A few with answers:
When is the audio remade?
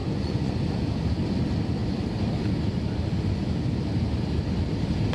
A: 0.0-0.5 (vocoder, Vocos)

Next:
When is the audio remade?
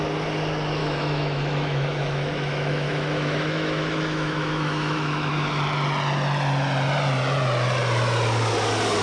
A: 0.8-5.3 (autoencoder, DAC-VAE)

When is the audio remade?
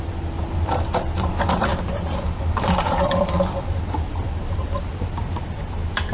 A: 1.7-5.4 (vocoder, BigVGAN v2)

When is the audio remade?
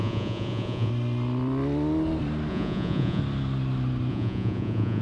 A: 0.0-0.9 (vocoder, Vocos); 2.5-3.2; 4.1-5.0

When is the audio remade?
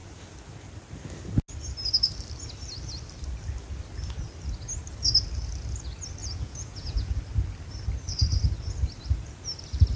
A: 6.2-7.2 (vocoder, Vocos)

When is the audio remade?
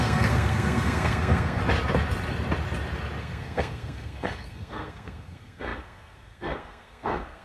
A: 0.0-1.6 (codec, SNAC); 3.2-7.4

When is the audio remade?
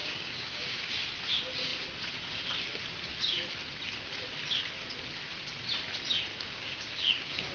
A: 0.0-0.9 (codec, DAC); 6.3-7.5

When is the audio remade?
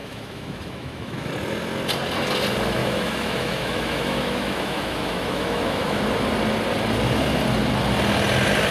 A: 0.0-1.3 (autoencoder, DAC-VAE); 2.8-6.0